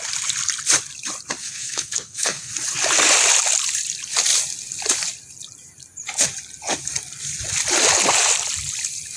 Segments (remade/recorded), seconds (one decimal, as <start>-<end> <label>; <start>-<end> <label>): 0.0-1.4 recorded; 1.4-2.5 remade; 2.5-9.2 recorded